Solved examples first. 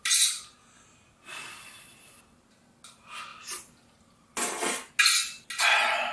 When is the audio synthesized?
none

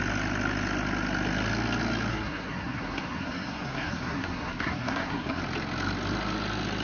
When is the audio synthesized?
2.1-5.4 (codec, SNAC)

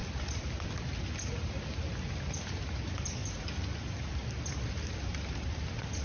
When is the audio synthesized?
3.2-4.1 (vocoder, BigVGAN v2)

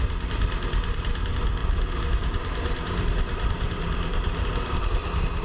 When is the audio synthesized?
1.6-4.8 (vocoder, BigVGAN v2)

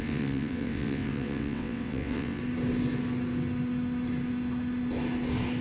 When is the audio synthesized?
0.0-2.4 (vocoder, WaveNeXt)

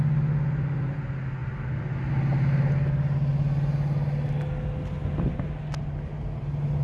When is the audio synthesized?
none

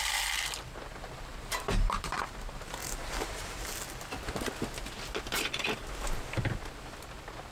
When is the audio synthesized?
1.3-3.8 (vocoder, BigVGAN v2)